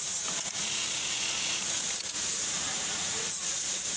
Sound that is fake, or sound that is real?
fake